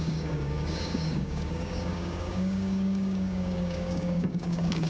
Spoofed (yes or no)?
yes